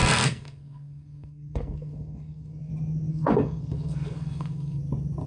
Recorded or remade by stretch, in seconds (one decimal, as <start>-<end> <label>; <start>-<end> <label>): 0.0-2.7 remade; 2.7-3.1 recorded; 3.1-4.8 remade; 4.8-5.3 recorded